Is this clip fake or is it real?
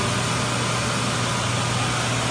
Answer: real